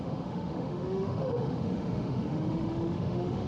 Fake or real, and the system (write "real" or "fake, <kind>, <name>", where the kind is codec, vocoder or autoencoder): fake, autoencoder, DAC-VAE